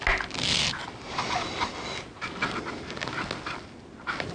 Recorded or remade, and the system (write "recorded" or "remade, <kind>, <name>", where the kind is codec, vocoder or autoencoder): recorded